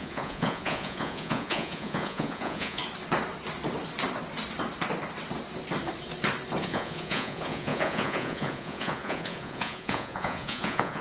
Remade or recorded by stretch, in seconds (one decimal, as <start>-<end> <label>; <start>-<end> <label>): 0.0-2.8 remade; 2.8-6.6 recorded; 6.6-11.0 remade